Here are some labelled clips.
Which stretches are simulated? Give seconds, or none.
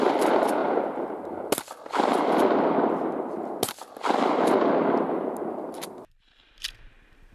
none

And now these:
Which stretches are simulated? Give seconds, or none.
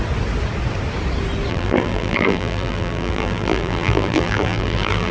1.5-5.1 (vocoder, BigVGAN v2)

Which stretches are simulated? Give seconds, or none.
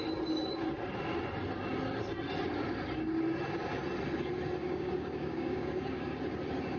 4.6-6.2 (codec, DAC)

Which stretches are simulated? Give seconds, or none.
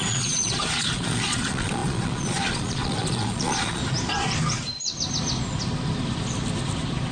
0.0-3.8 (vocoder, Vocos)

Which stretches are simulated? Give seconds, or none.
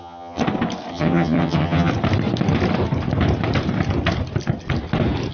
0.0-0.4 (vocoder, HiFi-GAN); 0.9-1.9